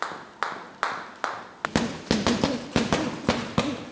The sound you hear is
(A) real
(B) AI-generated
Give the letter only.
A